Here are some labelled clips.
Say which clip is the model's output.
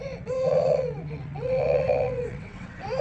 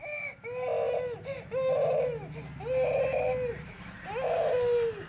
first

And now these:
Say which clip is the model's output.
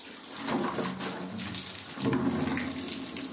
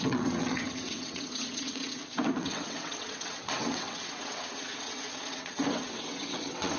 second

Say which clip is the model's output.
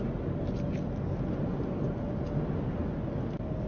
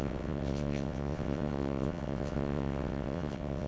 second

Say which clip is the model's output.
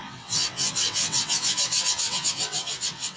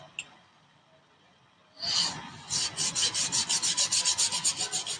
first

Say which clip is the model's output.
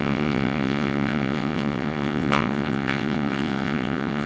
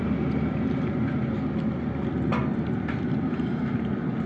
first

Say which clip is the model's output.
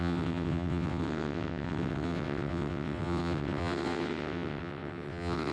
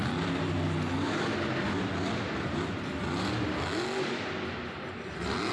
first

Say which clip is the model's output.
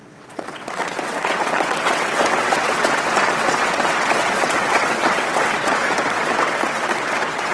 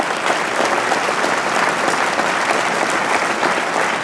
first